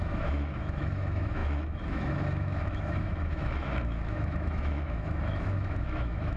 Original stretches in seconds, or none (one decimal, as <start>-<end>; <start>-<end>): none